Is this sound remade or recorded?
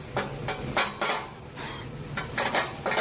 recorded